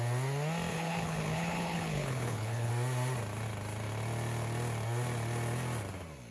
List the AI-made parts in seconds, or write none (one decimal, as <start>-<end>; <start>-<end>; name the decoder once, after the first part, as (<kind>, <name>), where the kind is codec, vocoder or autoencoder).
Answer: 0.7-2.7 (codec, HILCodec)